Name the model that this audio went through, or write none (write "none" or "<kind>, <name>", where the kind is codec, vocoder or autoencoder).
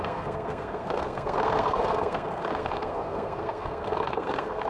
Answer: codec, SNAC